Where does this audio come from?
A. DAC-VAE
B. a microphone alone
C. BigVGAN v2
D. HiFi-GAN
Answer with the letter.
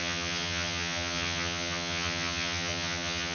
D